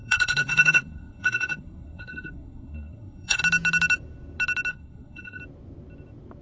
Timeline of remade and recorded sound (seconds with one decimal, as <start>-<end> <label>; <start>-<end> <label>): 0.0-3.4 remade; 3.4-4.7 recorded; 4.7-5.4 remade; 5.4-6.4 recorded